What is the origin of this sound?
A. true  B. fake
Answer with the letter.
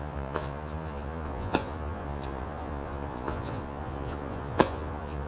B